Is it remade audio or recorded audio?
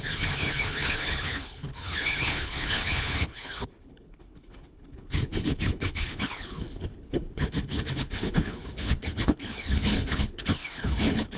remade